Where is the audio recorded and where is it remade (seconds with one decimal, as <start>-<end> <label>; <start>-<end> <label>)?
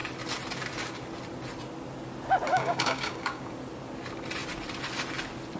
0.0-2.5 recorded; 2.5-3.5 remade; 3.5-5.6 recorded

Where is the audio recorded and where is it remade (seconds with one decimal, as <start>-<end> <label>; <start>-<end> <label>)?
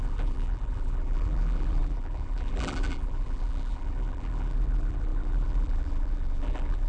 0.0-6.9 remade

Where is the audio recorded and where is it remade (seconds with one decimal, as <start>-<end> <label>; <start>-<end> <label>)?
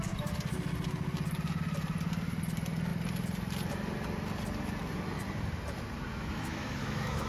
0.0-6.1 recorded; 6.1-7.3 remade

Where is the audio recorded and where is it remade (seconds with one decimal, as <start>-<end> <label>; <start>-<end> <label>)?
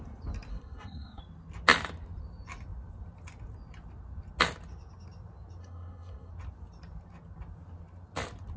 0.0-0.5 recorded; 0.5-1.2 remade; 1.2-5.6 recorded; 5.6-6.3 remade; 6.3-8.6 recorded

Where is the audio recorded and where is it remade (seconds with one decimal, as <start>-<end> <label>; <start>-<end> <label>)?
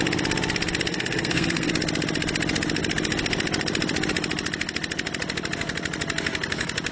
0.0-0.9 recorded; 0.9-1.7 remade; 1.7-6.9 recorded